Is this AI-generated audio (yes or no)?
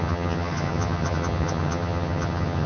yes